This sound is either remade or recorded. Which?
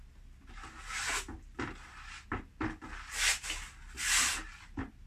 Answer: recorded